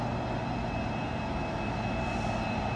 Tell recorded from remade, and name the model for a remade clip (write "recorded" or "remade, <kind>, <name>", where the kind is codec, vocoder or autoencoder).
recorded